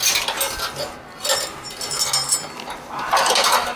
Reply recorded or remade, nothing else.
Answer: recorded